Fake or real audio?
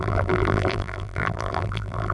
fake